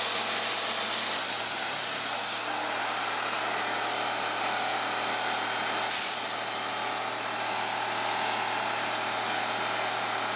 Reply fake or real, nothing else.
real